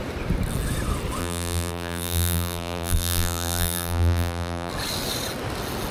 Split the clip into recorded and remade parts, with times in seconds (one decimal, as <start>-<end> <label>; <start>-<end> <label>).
0.0-1.2 recorded; 1.2-4.7 remade; 4.7-5.9 recorded